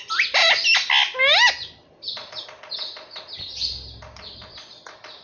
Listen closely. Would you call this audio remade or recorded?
recorded